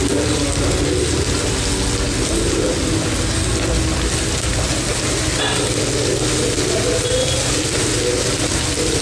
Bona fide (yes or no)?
yes